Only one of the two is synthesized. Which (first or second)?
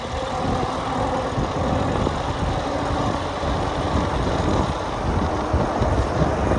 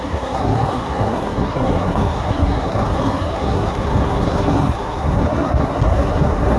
second